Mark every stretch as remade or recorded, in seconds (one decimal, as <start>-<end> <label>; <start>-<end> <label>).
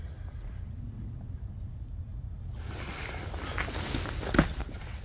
0.0-5.0 recorded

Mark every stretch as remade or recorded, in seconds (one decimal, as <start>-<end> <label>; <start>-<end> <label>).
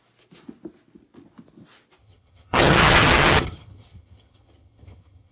0.0-2.0 recorded; 2.0-5.3 remade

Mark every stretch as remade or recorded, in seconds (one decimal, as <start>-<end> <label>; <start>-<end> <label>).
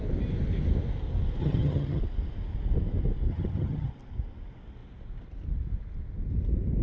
0.0-1.4 recorded; 1.4-2.0 remade; 2.0-3.3 recorded; 3.3-3.9 remade; 3.9-6.8 recorded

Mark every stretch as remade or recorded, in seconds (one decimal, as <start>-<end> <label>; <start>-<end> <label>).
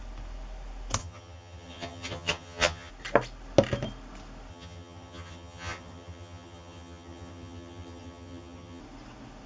0.0-1.0 recorded; 1.0-2.9 remade; 2.9-4.5 recorded; 4.5-8.8 remade; 8.8-9.5 recorded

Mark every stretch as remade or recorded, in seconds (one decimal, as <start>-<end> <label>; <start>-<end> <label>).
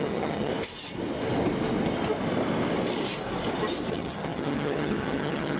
0.0-0.5 remade; 0.5-3.9 recorded; 3.9-5.6 remade